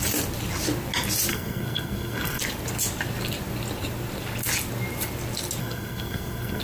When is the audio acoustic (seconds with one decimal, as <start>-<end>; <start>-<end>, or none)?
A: 0.0-1.3; 2.4-5.6